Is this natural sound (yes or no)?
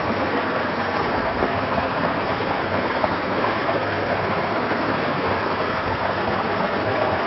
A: no